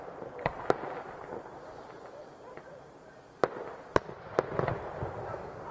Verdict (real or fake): real